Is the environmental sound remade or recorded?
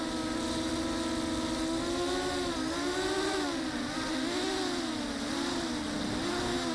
recorded